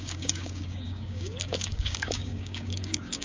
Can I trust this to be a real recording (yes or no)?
no